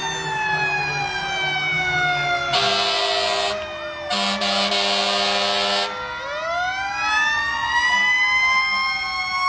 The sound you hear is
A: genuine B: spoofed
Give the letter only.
A